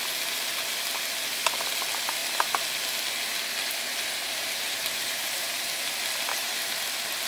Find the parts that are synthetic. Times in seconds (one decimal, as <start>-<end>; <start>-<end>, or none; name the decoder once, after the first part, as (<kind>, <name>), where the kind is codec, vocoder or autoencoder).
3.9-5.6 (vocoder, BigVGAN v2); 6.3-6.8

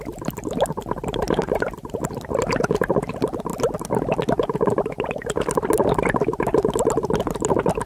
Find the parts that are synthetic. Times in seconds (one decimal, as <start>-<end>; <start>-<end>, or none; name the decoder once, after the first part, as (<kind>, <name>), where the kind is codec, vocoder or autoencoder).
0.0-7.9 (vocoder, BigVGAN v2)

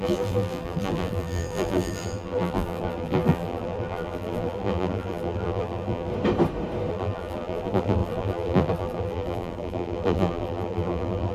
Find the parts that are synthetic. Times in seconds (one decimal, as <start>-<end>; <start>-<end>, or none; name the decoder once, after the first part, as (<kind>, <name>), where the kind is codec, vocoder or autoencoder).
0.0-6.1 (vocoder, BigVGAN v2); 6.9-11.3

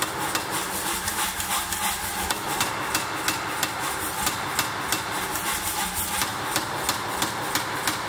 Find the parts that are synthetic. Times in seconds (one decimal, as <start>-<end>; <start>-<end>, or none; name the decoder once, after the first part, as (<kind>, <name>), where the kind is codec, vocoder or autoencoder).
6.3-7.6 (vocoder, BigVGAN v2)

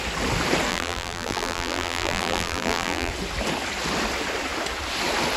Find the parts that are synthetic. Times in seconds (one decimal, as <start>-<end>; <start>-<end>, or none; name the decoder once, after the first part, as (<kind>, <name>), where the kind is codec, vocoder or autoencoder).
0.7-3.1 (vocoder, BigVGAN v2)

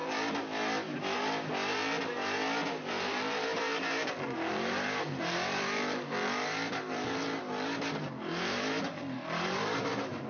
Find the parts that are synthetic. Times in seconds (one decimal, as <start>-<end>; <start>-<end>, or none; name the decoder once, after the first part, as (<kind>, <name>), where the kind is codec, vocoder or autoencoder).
2.9-10.3 (vocoder, BigVGAN v2)

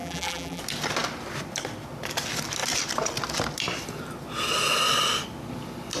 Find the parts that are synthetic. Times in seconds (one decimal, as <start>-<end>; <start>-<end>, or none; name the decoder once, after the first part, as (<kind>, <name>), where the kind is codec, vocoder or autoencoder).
0.0-0.6 (vocoder, BigVGAN v2)